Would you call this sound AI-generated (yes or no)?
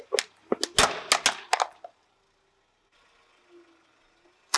no